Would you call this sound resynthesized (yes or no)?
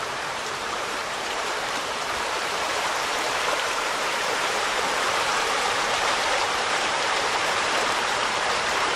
yes